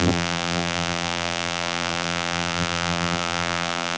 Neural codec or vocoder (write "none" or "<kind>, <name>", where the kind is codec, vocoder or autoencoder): vocoder, BigVGAN v2